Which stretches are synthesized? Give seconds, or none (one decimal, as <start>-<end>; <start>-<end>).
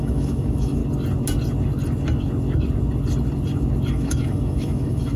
0.0-0.8; 3.9-5.2